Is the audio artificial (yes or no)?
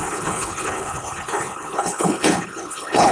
yes